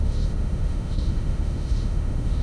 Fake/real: fake